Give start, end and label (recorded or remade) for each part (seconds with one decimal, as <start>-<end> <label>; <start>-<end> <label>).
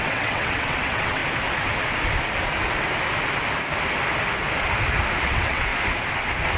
0.0-1.2 remade; 1.2-5.2 recorded; 5.2-5.7 remade; 5.7-6.6 recorded